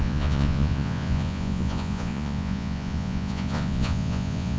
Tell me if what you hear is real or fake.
fake